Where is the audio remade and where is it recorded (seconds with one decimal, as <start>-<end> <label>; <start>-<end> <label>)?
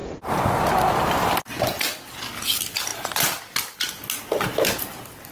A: 0.0-5.3 recorded